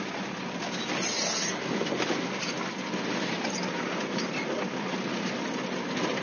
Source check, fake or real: real